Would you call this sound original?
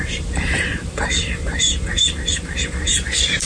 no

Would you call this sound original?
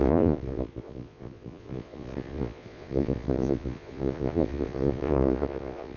no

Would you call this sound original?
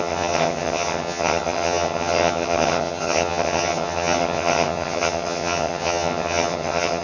no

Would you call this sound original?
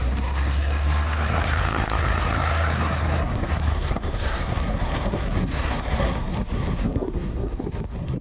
no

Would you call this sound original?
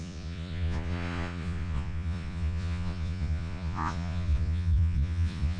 no